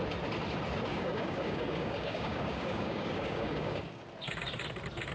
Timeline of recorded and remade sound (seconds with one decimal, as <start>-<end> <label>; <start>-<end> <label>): 0.0-0.9 recorded; 0.9-4.0 remade; 4.0-5.1 recorded